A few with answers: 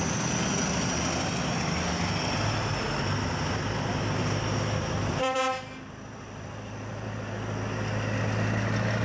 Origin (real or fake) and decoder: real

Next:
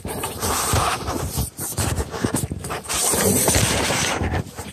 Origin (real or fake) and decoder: fake, vocoder, BigVGAN v2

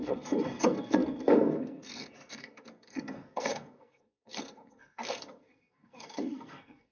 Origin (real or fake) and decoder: fake, codec, SNAC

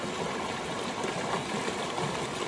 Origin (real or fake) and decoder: real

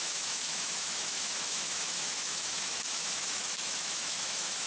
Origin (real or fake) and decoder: fake, autoencoder, DAC-VAE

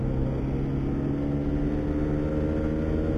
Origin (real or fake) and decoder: real